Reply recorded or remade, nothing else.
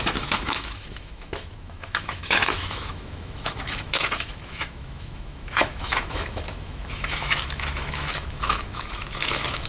remade